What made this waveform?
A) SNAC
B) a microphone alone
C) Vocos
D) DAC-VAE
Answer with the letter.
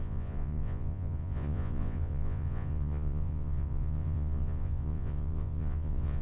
C